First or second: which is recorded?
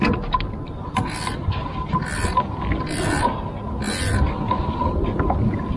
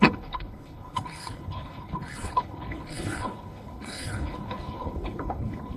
first